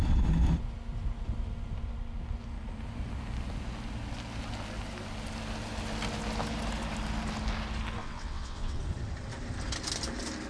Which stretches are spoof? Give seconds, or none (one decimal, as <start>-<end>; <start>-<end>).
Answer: 8.0-8.8

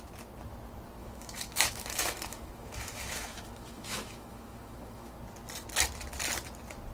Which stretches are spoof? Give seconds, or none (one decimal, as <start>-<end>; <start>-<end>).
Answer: 1.0-5.1